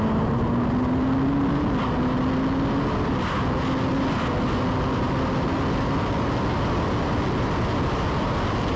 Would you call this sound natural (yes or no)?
yes